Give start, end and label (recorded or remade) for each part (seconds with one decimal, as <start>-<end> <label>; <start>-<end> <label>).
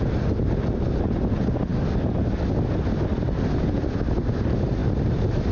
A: 0.0-1.7 remade; 1.7-3.6 recorded; 3.6-5.5 remade